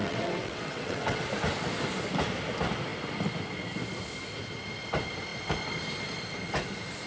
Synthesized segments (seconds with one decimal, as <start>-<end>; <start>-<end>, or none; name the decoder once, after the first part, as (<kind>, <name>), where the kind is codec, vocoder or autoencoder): 0.0-1.2 (vocoder, WaveNeXt)